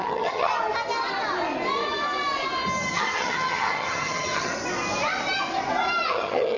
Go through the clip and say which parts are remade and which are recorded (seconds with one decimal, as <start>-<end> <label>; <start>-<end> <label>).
0.0-0.5 remade; 0.5-2.9 recorded; 2.9-4.5 remade; 4.5-6.1 recorded; 6.1-6.6 remade